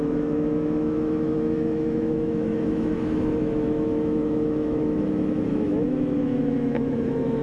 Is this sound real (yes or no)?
no